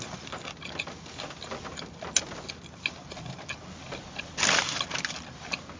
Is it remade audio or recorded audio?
recorded